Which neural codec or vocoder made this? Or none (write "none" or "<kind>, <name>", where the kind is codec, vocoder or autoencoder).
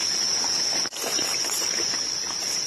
none